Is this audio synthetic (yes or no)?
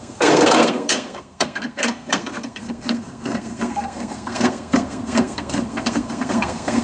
yes